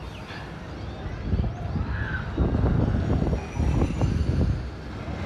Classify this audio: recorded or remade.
recorded